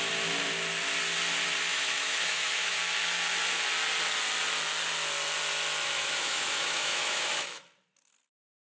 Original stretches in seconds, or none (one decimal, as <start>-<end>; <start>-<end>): 0.0-1.7; 2.8-5.8; 7.6-8.8